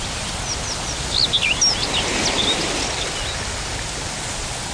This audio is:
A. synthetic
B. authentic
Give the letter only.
B